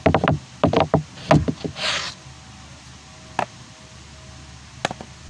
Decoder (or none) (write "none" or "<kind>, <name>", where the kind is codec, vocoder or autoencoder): none